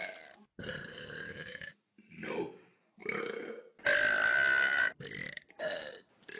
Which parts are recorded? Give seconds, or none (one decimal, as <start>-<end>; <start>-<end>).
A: 0.0-0.9; 1.7-6.4